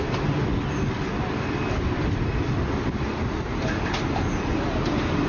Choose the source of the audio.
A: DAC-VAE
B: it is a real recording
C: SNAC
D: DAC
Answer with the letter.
B